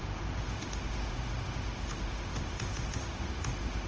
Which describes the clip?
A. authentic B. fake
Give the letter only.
B